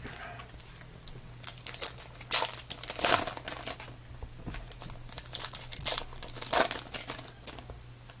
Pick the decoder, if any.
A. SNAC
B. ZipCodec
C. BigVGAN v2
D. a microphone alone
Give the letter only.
D